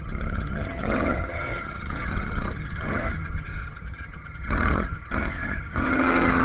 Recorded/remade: remade